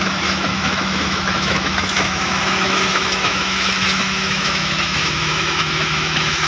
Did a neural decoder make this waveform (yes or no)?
yes